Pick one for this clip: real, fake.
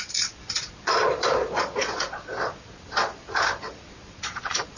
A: fake